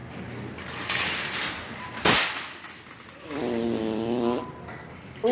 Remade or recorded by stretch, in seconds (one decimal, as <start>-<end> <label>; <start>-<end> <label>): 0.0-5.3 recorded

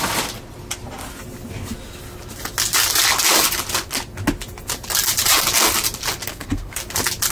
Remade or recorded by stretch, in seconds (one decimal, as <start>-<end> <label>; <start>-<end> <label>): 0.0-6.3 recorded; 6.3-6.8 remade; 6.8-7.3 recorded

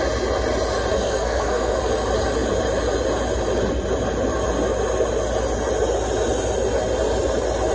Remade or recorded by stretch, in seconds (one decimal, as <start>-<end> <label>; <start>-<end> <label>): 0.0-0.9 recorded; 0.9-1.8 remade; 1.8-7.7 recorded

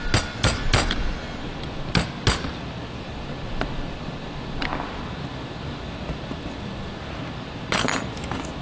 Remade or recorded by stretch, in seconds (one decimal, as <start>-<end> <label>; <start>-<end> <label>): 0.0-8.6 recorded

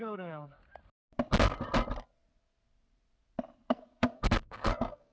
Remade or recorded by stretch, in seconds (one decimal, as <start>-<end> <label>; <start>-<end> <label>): 0.0-0.6 remade; 0.6-3.7 recorded; 3.7-5.1 remade

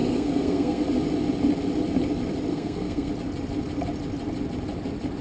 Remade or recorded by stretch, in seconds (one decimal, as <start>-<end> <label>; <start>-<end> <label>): 0.0-0.8 remade; 0.8-2.5 recorded; 2.5-3.1 remade; 3.1-5.2 recorded